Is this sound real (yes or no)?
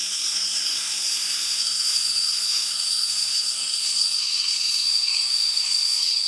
no